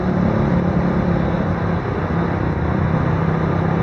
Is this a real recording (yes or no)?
yes